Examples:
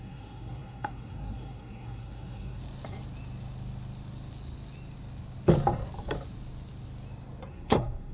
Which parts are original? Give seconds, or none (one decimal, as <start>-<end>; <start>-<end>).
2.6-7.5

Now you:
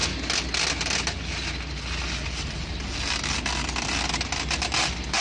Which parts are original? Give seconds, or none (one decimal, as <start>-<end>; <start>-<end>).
0.0-5.2

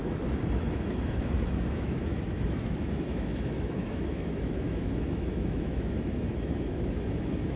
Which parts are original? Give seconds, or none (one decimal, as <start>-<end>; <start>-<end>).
0.0-0.6